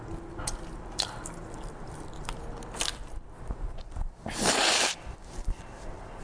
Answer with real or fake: real